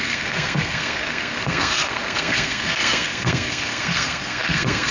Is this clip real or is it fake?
fake